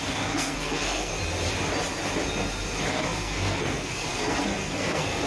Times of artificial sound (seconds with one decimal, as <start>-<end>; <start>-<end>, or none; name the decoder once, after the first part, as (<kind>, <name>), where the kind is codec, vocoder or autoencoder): 0.0-1.1 (codec, SNAC); 2.9-5.3